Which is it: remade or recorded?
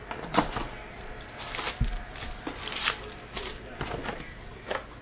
recorded